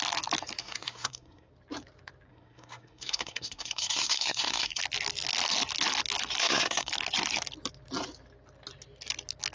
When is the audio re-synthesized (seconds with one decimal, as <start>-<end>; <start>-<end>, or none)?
0.6-1.5; 2.3-4.8; 6.4-6.9